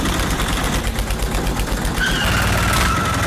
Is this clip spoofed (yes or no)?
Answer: no